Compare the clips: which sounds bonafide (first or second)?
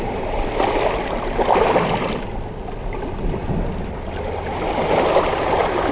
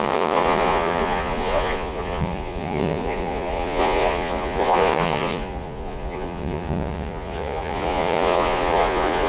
first